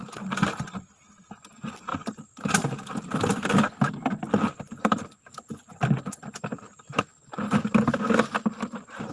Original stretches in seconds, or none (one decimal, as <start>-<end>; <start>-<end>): 0.0-1.9; 7.0-9.1